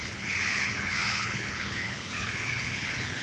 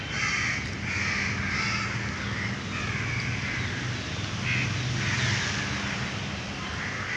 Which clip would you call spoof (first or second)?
first